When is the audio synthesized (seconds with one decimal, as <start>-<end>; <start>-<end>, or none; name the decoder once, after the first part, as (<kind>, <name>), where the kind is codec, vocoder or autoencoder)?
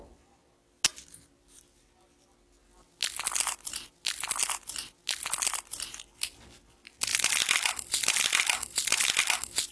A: none